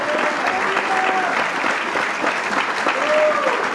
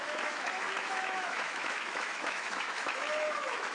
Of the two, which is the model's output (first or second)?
second